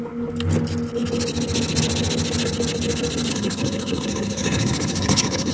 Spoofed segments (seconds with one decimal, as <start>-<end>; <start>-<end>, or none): 3.3-5.5